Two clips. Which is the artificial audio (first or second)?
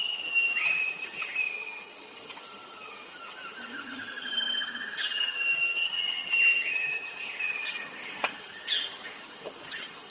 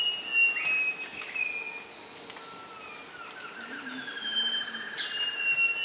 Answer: first